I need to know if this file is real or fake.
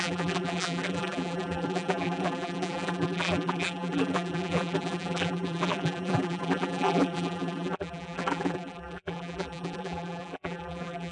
fake